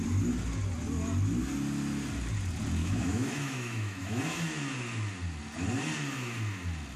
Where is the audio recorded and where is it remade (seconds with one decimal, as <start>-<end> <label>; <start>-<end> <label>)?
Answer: 0.0-2.8 recorded; 2.8-4.2 remade; 4.2-7.0 recorded